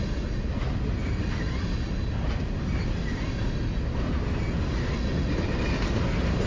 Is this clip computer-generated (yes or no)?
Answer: no